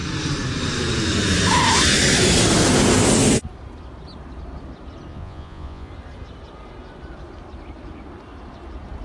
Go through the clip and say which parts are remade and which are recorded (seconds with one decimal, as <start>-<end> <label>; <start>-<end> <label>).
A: 0.0-5.1 recorded; 5.1-5.9 remade; 5.9-9.0 recorded